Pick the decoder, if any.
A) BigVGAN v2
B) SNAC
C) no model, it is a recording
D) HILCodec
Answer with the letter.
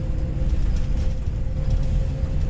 C